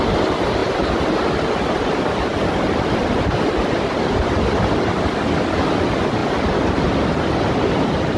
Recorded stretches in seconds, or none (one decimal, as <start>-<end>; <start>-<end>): 0.0-8.2